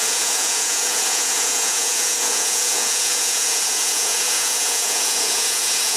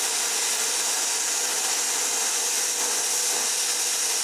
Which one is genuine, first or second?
second